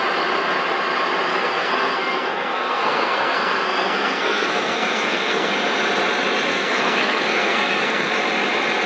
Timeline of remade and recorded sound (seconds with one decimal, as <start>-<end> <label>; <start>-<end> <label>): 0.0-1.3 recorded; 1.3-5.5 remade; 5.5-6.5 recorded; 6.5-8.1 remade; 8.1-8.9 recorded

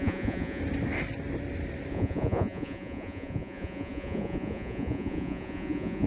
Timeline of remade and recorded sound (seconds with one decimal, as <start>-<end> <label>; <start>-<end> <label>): 0.0-0.6 remade; 0.6-1.9 recorded; 1.9-6.1 remade

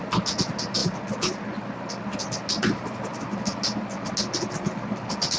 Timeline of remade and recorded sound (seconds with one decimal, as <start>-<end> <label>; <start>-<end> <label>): 0.0-5.4 recorded

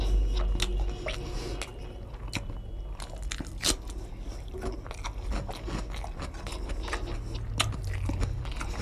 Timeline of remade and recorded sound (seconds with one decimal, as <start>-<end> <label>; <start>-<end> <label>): 0.0-8.8 recorded